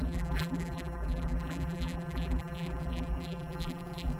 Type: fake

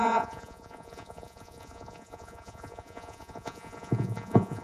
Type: fake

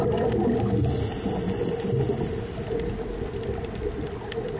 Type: real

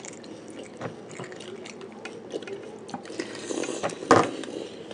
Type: real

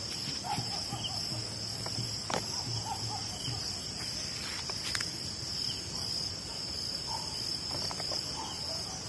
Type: real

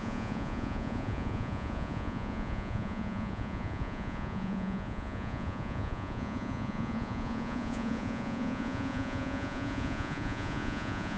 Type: fake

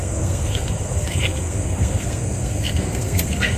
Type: fake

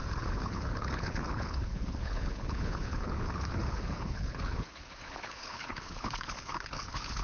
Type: fake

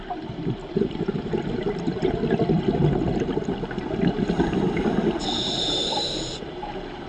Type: real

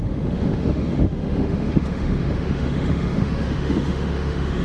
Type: fake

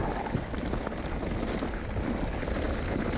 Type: real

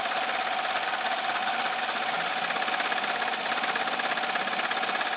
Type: real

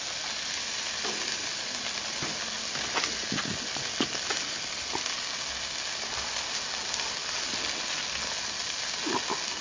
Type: real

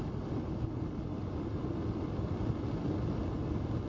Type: real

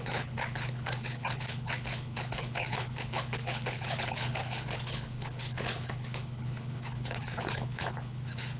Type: fake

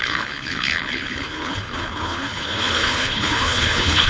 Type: fake